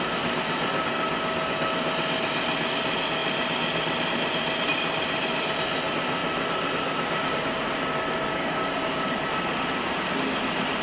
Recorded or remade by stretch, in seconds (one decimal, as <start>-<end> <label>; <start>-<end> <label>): 0.0-8.3 recorded; 8.3-9.1 remade; 9.1-10.8 recorded